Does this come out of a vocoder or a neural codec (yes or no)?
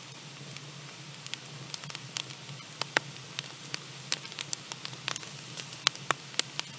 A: no